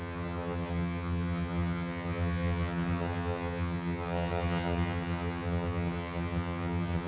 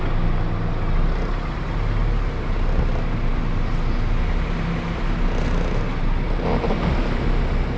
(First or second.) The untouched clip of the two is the second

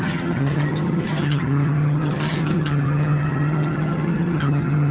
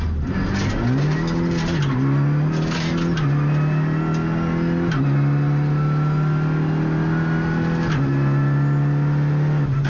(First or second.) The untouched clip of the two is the second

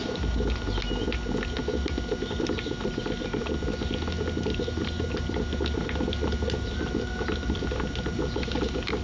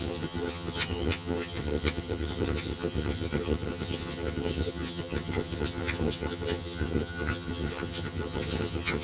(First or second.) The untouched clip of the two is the first